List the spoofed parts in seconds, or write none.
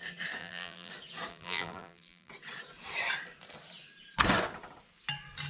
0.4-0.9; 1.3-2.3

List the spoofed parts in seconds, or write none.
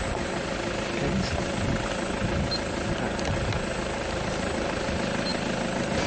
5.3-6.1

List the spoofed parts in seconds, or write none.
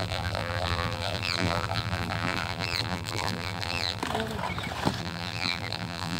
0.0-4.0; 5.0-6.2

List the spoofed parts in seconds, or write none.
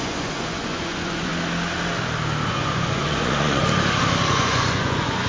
0.0-1.3; 2.5-3.6; 4.3-5.3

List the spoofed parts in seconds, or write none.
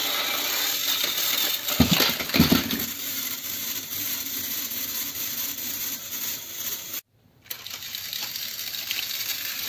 3.0-9.7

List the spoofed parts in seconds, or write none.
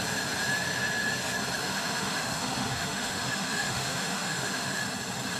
1.6-4.8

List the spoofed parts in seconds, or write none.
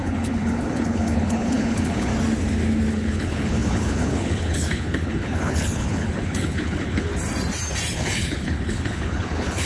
0.0-2.1; 2.9-7.1; 7.9-9.7